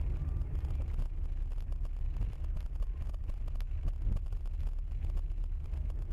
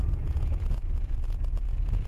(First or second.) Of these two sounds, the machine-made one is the second